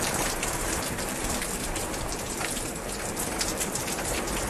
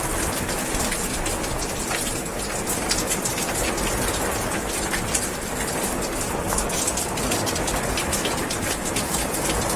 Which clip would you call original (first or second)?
second